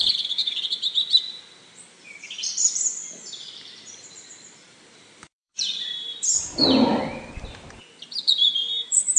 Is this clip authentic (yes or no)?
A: no